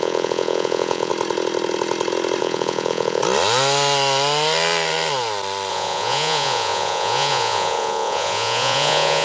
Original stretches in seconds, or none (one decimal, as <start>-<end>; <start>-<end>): 1.1-2.4; 3.2-5.7